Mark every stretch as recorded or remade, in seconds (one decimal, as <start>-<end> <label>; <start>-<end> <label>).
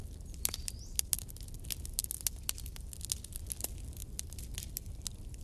0.0-5.4 recorded